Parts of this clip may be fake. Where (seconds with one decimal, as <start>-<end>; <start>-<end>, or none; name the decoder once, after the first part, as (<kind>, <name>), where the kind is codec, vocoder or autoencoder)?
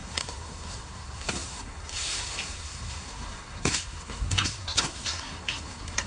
0.0-6.1 (codec, SNAC)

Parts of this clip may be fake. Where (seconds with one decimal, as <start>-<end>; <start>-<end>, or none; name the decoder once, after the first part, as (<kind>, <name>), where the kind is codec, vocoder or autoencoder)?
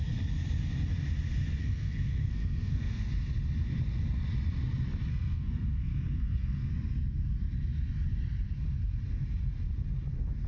1.6-3.1 (codec, SNAC); 5.1-6.7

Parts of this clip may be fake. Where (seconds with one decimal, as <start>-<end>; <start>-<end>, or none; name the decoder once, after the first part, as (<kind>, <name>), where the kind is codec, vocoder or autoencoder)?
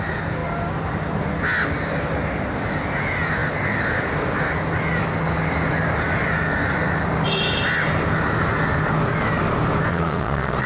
9.9-10.7 (vocoder, Vocos)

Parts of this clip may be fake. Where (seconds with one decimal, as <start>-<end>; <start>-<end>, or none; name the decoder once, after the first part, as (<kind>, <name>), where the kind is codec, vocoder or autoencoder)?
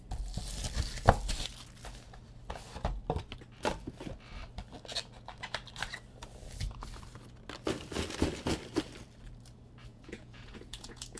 9.9-11.2 (vocoder, Vocos)